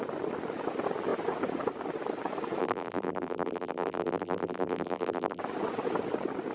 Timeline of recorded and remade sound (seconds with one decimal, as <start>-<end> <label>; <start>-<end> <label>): 0.0-2.6 recorded; 2.6-5.4 remade; 5.4-6.5 recorded